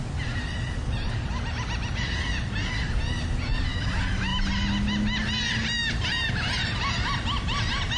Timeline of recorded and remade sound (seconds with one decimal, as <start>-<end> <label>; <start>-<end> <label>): 0.0-8.0 recorded